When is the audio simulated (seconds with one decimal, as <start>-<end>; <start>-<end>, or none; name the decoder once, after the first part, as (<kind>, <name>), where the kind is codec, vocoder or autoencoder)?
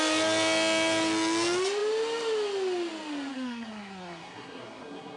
3.3-5.2 (codec, SNAC)